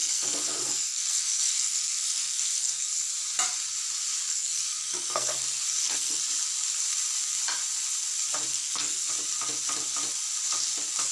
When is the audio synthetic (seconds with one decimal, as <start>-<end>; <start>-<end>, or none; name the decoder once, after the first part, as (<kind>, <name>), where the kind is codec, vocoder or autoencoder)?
0.0-3.1 (codec, SNAC); 4.3-6.2; 8.5-9.1